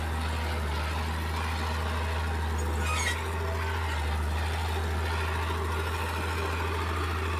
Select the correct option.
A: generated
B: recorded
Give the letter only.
B